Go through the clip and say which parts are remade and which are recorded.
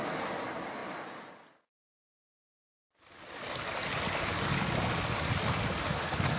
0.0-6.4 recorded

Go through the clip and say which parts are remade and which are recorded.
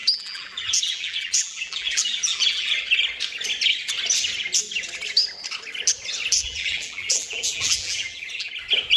0.0-2.7 remade; 2.7-6.4 recorded; 6.4-8.5 remade; 8.5-9.0 recorded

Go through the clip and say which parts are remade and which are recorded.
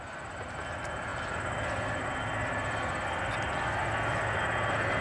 0.0-5.0 recorded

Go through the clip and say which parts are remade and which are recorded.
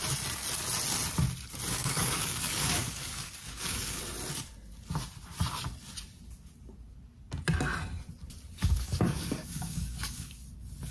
0.0-1.8 recorded; 1.8-4.0 remade; 4.0-8.6 recorded; 8.6-10.5 remade; 10.5-10.9 recorded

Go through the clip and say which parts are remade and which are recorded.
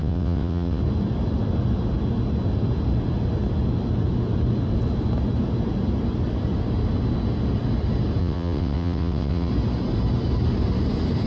0.0-0.8 remade; 0.8-8.2 recorded; 8.2-9.5 remade; 9.5-11.3 recorded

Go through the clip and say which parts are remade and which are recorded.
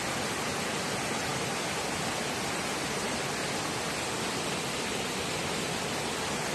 0.0-6.5 recorded